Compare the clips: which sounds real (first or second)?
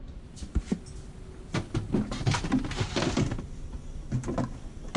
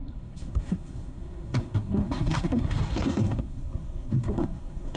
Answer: first